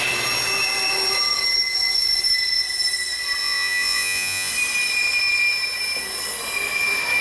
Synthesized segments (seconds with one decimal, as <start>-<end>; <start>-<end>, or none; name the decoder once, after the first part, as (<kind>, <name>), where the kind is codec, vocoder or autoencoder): 3.4-4.5 (vocoder, Vocos)